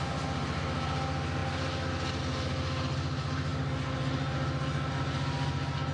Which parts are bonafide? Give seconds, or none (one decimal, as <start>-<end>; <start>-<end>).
0.0-5.9